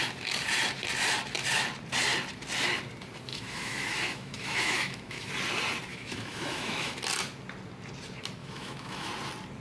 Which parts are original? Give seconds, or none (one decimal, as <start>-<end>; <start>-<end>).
0.0-3.3; 5.3-5.9; 7.0-8.4; 9.1-9.6